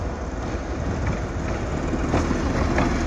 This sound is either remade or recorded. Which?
recorded